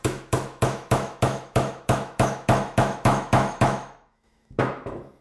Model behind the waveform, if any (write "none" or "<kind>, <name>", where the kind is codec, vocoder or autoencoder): autoencoder, DAC-VAE